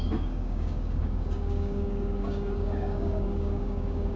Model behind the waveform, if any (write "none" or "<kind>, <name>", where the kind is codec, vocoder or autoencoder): codec, DAC